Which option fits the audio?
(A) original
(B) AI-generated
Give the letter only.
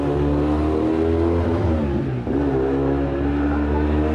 A